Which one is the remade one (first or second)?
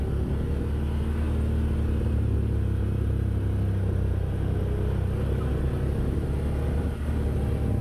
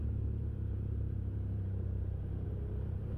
second